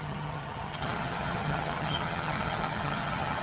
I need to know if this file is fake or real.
fake